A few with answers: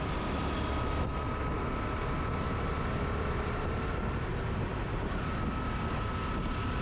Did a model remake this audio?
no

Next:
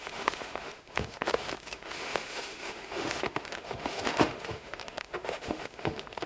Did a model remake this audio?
yes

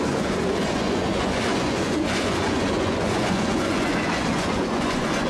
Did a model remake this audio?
yes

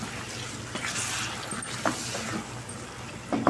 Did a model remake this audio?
no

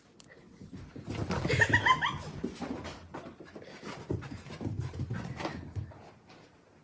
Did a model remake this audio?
no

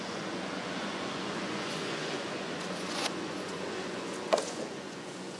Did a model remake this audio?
yes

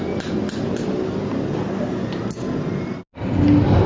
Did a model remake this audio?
no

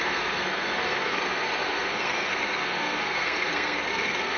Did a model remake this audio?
yes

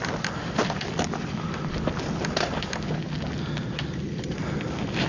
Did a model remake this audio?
no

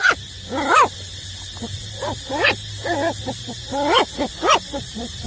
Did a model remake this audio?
no